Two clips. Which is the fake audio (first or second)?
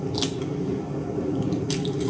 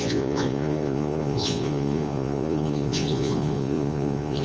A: second